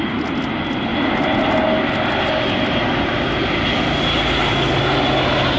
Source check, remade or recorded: recorded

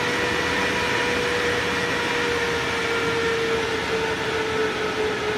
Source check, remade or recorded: recorded